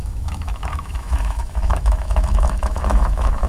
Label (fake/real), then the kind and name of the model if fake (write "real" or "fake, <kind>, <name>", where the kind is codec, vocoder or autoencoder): fake, autoencoder, DAC-VAE